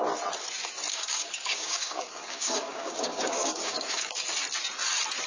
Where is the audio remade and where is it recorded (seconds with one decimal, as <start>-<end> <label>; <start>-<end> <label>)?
0.0-0.9 recorded; 0.9-4.1 remade; 4.1-5.3 recorded